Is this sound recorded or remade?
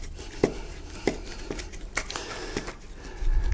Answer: recorded